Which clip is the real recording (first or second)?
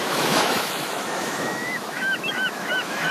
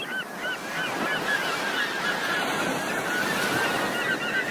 second